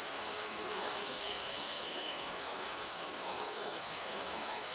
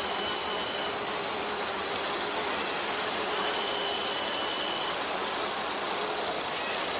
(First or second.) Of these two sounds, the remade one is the first